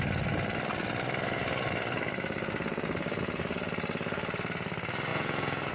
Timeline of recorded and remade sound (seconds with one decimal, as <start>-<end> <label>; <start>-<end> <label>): 0.0-5.1 recorded; 5.1-5.7 remade